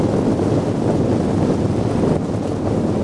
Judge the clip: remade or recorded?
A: recorded